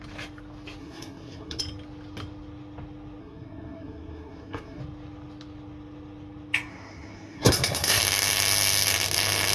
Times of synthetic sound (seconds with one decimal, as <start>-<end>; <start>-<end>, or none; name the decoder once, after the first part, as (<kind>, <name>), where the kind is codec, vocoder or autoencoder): 0.8-1.6 (codec, SNAC); 3.2-4.8; 6.7-8.0